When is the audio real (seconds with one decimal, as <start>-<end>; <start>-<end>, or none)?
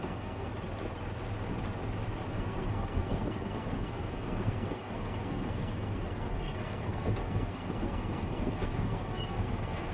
0.5-2.3